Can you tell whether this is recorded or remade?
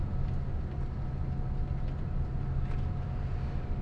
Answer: recorded